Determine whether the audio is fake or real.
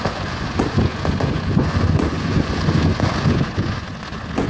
fake